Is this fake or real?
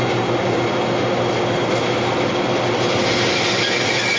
real